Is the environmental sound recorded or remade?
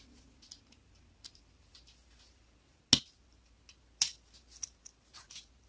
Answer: recorded